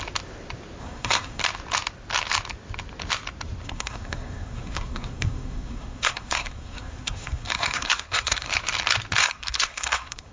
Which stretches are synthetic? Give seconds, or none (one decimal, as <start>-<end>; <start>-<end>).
0.8-1.4; 3.6-8.5; 9.2-10.3